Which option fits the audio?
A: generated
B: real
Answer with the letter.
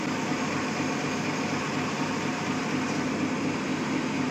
B